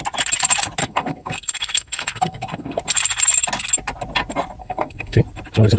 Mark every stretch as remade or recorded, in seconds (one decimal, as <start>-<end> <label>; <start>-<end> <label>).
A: 0.0-0.8 recorded; 0.8-2.8 remade; 2.8-4.6 recorded; 4.6-5.2 remade; 5.2-5.8 recorded